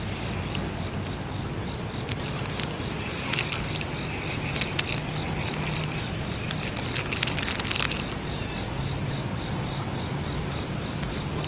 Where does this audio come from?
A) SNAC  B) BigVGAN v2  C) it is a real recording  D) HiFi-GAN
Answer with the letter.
C